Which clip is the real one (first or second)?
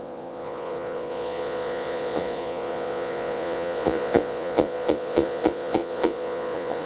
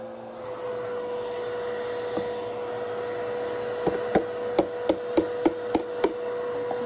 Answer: second